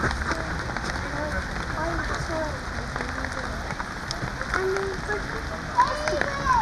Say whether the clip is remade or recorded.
recorded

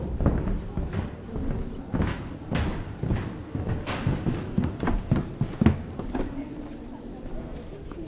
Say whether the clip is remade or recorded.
recorded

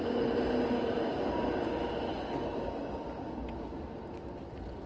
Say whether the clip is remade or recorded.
recorded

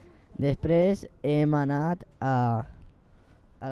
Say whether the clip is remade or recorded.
remade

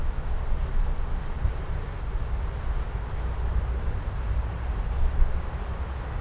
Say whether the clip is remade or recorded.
recorded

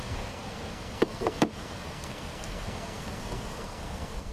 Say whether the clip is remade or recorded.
remade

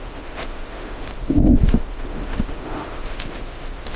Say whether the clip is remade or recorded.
remade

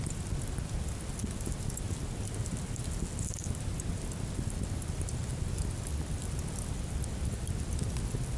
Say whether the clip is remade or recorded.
recorded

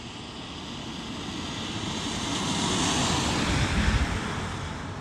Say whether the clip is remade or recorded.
recorded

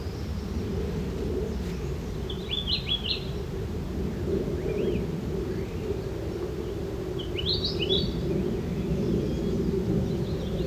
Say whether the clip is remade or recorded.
recorded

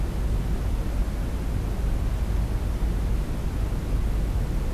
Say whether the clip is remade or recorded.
recorded